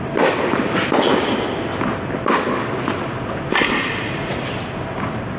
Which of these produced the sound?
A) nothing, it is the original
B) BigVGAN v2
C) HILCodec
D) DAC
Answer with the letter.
A